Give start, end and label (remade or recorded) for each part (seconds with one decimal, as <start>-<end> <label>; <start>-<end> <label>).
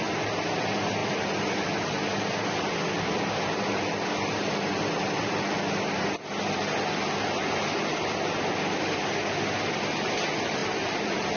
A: 0.0-10.6 recorded; 10.6-11.4 remade